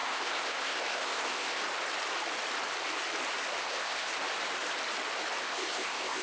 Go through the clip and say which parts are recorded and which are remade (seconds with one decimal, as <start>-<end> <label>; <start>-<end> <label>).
0.0-1.6 remade; 1.6-3.6 recorded; 3.6-4.1 remade; 4.1-5.4 recorded; 5.4-6.2 remade